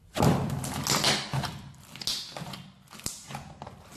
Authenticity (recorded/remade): recorded